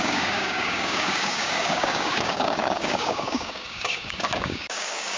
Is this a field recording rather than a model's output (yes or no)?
no